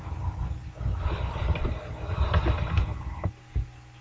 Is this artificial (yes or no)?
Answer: no